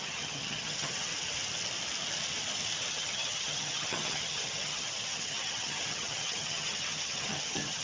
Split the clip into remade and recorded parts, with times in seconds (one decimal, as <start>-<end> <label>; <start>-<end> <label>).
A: 0.0-1.1 remade; 1.1-2.9 recorded; 2.9-7.8 remade